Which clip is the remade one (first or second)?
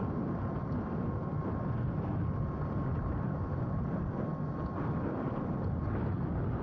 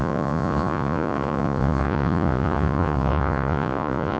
second